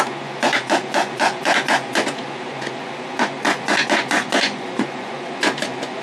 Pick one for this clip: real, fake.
fake